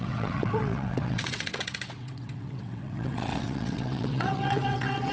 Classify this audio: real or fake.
fake